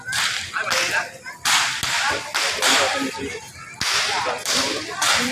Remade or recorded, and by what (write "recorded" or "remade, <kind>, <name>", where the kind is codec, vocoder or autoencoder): recorded